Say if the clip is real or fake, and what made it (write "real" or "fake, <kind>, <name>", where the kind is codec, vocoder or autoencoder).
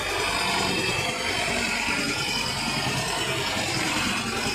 fake, vocoder, BigVGAN v2